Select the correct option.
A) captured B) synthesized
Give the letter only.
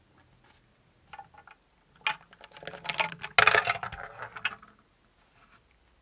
A